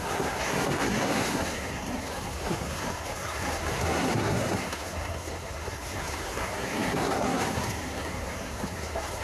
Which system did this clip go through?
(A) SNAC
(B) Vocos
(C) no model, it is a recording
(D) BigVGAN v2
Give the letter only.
A